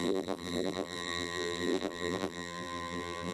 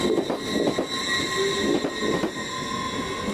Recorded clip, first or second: second